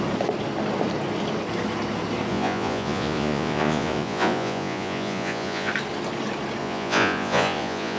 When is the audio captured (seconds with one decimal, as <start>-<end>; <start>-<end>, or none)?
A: 0.0-2.3; 5.7-6.6